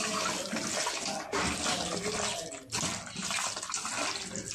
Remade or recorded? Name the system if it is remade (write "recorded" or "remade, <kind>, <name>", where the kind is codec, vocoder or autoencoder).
recorded